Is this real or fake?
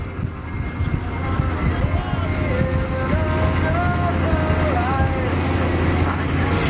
real